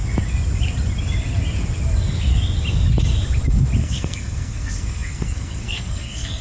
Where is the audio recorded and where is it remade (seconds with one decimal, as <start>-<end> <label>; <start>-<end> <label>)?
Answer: 0.0-3.8 recorded; 3.8-6.4 remade